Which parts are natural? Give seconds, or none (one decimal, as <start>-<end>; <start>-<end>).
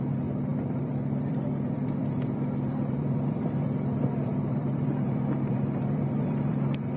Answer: none